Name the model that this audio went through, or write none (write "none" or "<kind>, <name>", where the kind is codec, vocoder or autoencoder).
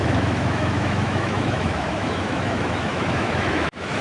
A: autoencoder, DAC-VAE